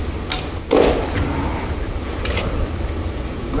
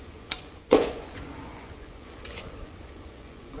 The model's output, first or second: second